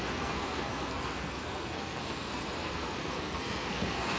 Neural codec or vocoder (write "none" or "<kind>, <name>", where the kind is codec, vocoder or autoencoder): codec, SNAC